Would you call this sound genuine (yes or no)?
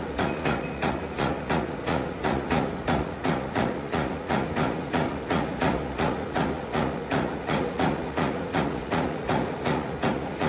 no